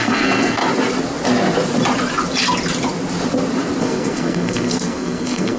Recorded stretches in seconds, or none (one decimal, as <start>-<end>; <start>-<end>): 0.6-3.8